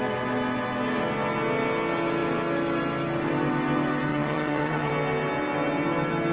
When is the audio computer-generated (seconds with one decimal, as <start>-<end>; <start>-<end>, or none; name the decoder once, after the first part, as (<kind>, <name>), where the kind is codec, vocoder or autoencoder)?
4.1-4.9 (vocoder, WaveNeXt)